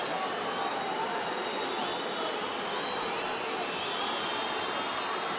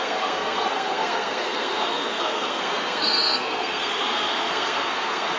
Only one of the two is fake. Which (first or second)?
second